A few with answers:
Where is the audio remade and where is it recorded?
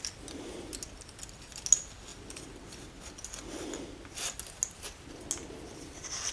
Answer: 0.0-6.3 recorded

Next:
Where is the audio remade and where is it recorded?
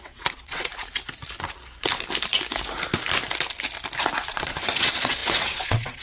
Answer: 0.0-0.7 remade; 0.7-4.3 recorded; 4.3-6.0 remade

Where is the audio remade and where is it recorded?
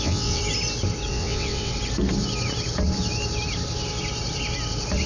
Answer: 0.0-0.4 remade; 0.4-1.1 recorded; 1.1-1.7 remade; 1.7-5.1 recorded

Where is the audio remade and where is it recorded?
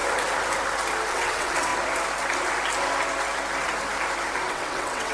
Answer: 0.0-1.1 recorded; 1.1-1.7 remade; 1.7-4.5 recorded; 4.5-5.1 remade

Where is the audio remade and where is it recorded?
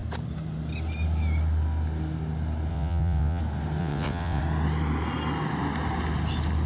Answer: 0.0-2.7 recorded; 2.7-3.4 remade; 3.4-3.8 recorded; 3.8-4.4 remade; 4.4-6.7 recorded